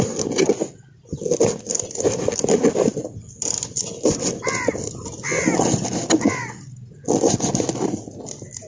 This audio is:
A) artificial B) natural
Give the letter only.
B